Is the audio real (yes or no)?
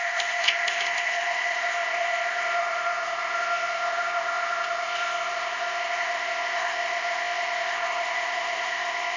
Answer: no